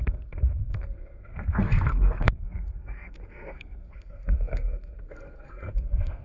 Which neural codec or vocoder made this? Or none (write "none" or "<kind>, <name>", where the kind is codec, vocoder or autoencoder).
codec, SNAC